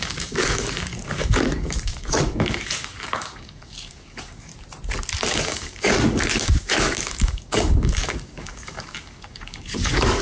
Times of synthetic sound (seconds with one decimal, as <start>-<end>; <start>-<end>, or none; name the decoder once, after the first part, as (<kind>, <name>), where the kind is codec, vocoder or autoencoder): 0.0-4.5 (codec, DAC); 5.3-10.2